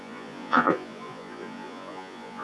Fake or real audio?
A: fake